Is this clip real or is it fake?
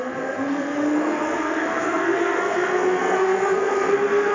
fake